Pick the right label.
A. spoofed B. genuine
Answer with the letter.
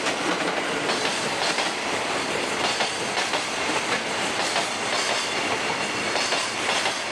A